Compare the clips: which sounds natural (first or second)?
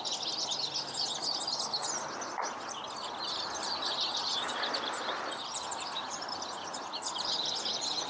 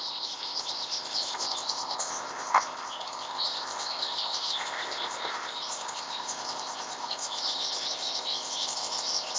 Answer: first